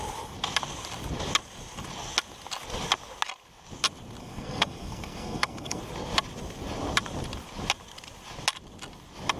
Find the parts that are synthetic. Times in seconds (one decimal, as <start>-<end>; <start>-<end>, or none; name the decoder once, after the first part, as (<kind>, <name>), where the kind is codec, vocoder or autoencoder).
4.2-5.8 (codec, SNAC)